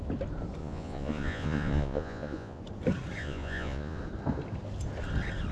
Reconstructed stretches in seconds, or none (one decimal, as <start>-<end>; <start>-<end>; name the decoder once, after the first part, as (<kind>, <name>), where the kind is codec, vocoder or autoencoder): 0.6-2.6 (vocoder, Vocos); 3.2-4.0